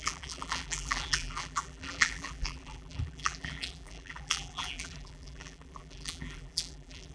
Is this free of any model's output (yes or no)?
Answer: no